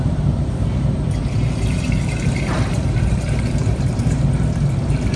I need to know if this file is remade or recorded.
remade